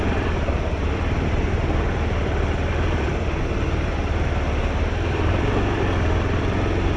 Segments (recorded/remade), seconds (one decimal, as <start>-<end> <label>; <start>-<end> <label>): 0.0-7.0 remade